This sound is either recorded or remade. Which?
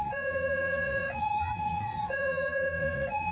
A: remade